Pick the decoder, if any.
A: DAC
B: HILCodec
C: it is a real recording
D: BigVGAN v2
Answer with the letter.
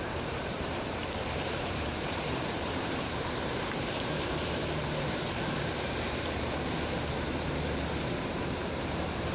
D